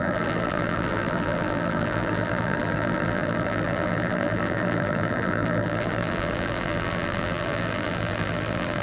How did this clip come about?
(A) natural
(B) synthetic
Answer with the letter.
B